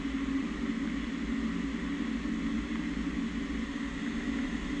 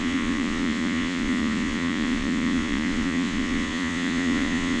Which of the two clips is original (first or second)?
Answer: first